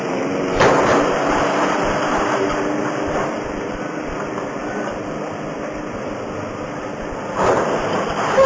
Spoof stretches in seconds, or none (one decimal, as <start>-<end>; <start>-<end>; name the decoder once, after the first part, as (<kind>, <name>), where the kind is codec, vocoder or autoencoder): 0.0-4.6 (vocoder, BigVGAN v2); 6.9-8.5